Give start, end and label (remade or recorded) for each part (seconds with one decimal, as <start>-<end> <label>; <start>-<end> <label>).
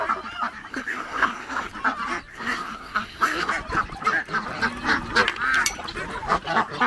0.0-0.7 recorded; 0.7-1.7 remade; 1.7-2.3 recorded; 2.3-3.5 remade; 3.5-6.9 recorded